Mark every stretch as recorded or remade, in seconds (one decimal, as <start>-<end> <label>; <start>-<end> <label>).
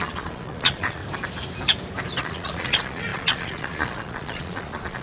0.0-1.0 remade; 1.0-2.2 recorded; 2.2-5.0 remade